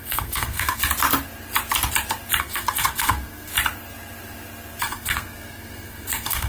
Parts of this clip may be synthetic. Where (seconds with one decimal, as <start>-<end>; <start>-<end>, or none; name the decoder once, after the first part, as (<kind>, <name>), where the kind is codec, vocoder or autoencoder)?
0.0-0.8 (codec, SNAC); 2.4-3.5; 4.8-6.5